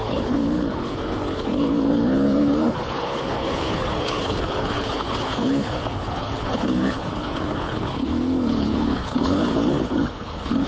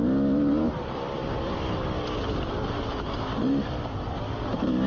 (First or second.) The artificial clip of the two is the first